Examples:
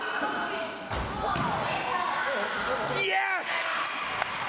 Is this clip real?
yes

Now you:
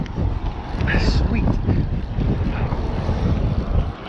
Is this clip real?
yes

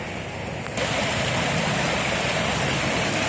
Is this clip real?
yes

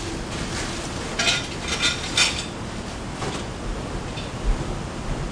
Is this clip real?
yes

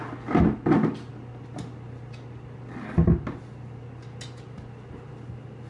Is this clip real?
yes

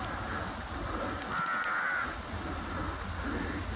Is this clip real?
yes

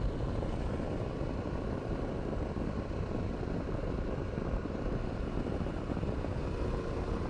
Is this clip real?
yes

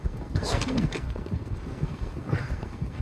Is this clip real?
no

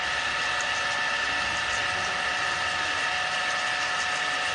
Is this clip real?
yes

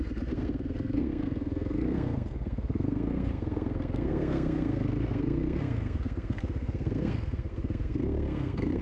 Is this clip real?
no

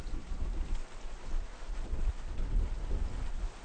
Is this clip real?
yes